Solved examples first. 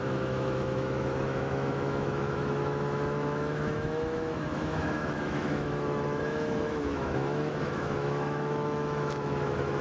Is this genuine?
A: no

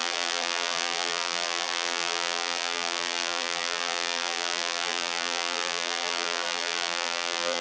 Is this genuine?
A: no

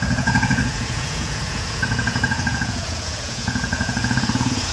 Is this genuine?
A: no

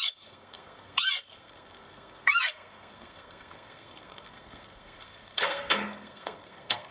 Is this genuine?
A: no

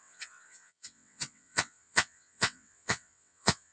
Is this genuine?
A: no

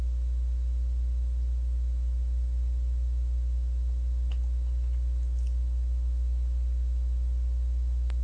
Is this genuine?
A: yes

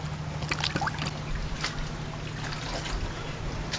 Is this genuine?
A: yes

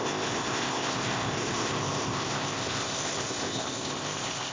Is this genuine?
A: no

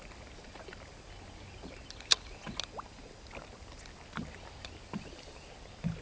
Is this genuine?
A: yes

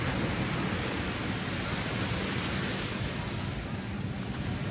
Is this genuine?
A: yes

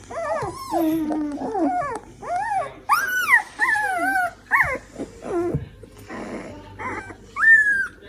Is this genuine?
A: yes